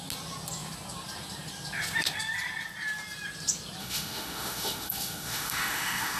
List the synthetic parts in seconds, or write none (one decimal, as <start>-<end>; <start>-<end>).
3.8-6.2